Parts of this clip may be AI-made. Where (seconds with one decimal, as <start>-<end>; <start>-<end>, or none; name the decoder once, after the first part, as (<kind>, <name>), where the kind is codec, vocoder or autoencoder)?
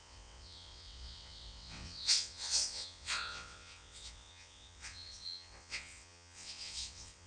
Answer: 0.0-7.3 (vocoder, WaveNeXt)